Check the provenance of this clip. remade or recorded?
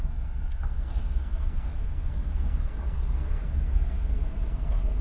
remade